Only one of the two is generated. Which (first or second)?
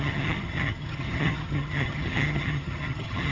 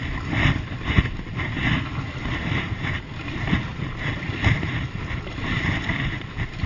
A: first